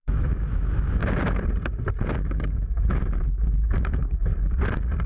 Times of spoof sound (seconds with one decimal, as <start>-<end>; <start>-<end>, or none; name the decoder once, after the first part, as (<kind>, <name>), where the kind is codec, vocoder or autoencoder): 0.0-1.0 (autoencoder, DAC-VAE); 2.3-4.3

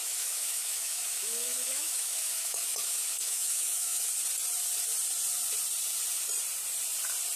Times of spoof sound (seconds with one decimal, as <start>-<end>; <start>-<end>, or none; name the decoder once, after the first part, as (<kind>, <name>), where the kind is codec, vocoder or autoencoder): 0.0-4.1 (autoencoder, DAC-VAE)

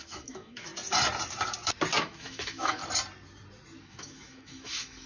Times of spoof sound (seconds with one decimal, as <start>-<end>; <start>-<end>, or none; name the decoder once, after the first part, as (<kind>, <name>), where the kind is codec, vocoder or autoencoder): 0.0-0.7 (autoencoder, DAC-VAE); 2.0-2.8; 3.8-5.1

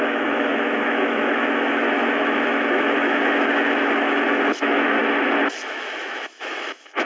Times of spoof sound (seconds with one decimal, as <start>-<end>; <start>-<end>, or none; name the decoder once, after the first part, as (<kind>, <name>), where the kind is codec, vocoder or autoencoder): 0.0-5.0 (autoencoder, DAC-VAE); 5.5-7.1

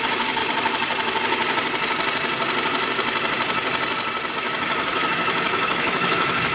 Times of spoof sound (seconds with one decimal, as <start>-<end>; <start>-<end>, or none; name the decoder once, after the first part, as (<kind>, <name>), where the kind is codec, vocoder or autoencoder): 0.0-0.4 (autoencoder, DAC-VAE); 4.3-6.5